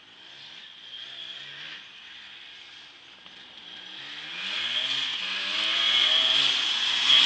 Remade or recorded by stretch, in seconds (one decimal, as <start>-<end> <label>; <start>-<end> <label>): 0.0-7.3 recorded